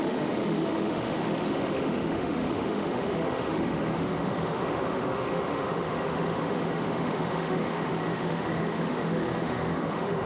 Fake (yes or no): yes